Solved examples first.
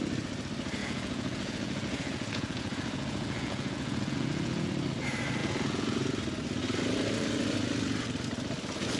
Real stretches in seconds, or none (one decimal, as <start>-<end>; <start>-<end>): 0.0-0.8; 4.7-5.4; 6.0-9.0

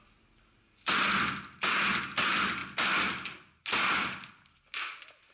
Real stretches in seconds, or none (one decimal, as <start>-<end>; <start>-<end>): 0.0-5.3

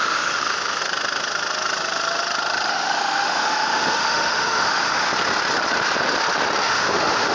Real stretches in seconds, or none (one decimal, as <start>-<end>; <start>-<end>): 0.8-2.7; 5.1-6.6